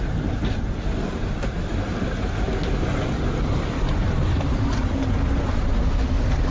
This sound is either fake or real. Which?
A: real